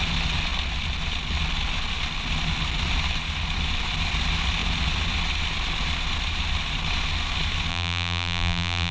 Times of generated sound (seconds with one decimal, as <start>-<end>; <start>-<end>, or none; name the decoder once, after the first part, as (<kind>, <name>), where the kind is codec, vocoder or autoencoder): 7.7-8.9 (vocoder, BigVGAN v2)